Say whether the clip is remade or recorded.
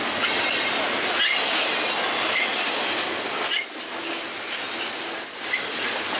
recorded